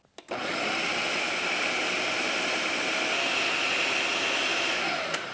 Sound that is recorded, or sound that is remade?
recorded